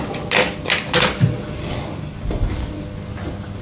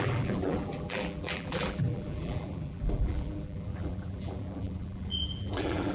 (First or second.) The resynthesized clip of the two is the second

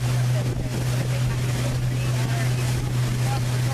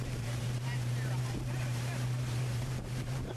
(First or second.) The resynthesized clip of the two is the second